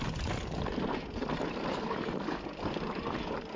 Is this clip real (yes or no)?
yes